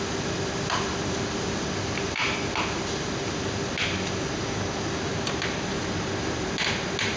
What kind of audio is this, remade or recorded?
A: recorded